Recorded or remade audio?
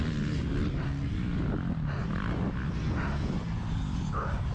recorded